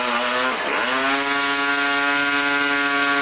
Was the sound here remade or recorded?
recorded